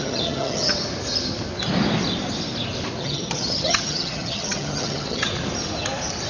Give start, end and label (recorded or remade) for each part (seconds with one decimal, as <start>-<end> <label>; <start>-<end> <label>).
0.0-0.7 remade; 0.7-3.0 recorded; 3.0-5.3 remade; 5.3-6.3 recorded